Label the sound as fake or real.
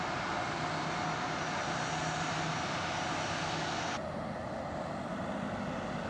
real